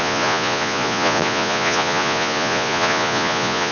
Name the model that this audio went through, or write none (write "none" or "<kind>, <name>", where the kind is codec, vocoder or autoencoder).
vocoder, Vocos